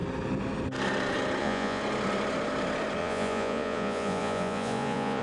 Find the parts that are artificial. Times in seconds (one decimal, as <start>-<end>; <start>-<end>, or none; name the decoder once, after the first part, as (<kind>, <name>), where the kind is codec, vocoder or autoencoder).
1.4-1.8 (vocoder, Vocos); 3.0-5.2

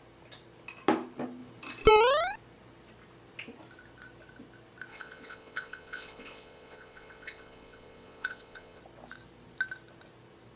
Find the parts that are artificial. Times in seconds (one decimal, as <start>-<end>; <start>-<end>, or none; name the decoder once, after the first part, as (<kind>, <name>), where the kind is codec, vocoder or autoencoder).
4.9-8.8 (vocoder, Vocos)

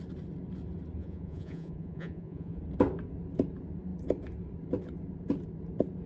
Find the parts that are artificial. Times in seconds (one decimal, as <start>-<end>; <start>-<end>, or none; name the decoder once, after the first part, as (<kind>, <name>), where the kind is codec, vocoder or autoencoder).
1.0-2.6 (vocoder, Vocos)

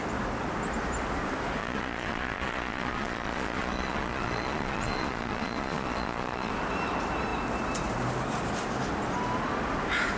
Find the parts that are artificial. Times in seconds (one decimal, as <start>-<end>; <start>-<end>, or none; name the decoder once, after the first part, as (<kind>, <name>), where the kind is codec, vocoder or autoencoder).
1.6-6.5 (vocoder, Vocos)

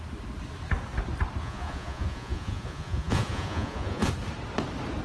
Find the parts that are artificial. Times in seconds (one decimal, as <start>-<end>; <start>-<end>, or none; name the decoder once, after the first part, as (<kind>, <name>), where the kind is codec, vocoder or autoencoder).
1.4-4.1 (vocoder, Vocos)

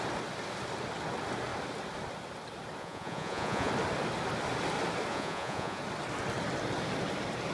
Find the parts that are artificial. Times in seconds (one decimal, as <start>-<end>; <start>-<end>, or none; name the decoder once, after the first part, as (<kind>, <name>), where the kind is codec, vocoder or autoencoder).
2.8-3.7 (vocoder, Vocos); 5.1-5.8

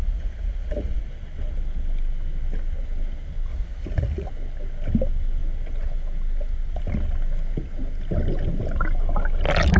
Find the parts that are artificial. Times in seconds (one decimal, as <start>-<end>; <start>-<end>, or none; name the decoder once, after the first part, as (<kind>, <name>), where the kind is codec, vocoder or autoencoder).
0.0-1.0 (vocoder, Vocos); 3.5-4.3

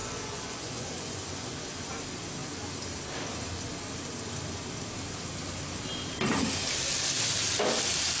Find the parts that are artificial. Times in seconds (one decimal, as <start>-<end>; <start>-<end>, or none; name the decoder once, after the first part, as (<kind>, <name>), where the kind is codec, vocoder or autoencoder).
0.0-1.9 (vocoder, Vocos)